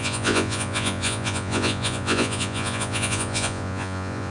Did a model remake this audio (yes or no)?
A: yes